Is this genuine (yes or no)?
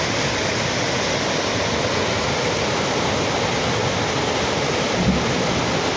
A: yes